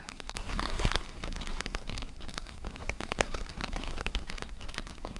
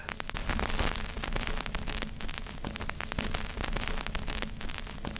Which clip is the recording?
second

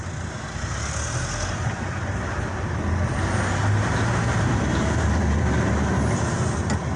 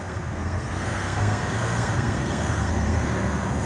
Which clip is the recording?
first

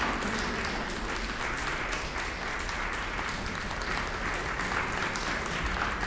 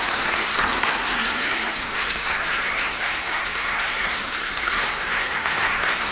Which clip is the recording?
first